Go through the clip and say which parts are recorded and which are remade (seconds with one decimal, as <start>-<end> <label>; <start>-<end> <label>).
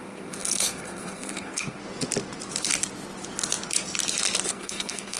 0.0-1.8 remade; 1.8-4.5 recorded; 4.5-5.2 remade